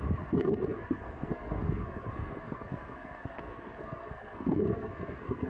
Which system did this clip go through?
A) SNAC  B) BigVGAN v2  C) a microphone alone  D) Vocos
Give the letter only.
A